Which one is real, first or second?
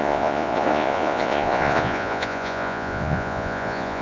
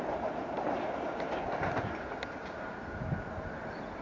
second